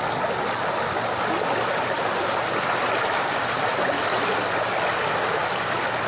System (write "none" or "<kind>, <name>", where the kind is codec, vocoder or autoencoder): none